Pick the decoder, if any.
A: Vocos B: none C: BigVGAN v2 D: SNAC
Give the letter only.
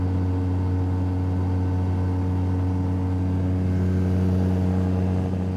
B